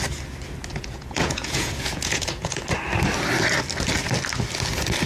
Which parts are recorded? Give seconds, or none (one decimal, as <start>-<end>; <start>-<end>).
0.0-0.7; 2.6-5.1